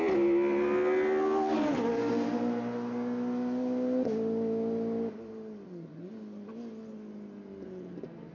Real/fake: real